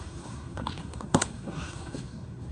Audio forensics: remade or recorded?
remade